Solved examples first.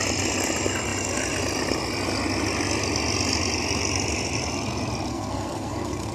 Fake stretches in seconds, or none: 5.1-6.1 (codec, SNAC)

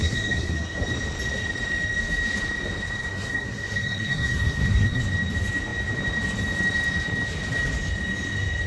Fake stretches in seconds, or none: 0.0-0.8 (codec, SNAC); 3.0-5.0

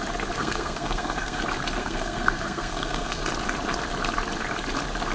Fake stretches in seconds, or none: 0.4-1.4 (codec, SNAC); 1.8-3.2

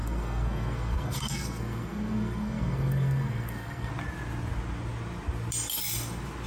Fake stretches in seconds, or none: 0.0-3.9 (codec, SNAC)

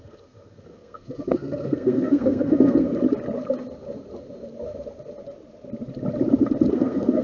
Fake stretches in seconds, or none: 0.0-2.9 (codec, SNAC); 6.7-7.2

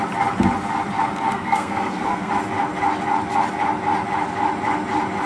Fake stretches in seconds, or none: 1.3-2.3 (codec, SNAC)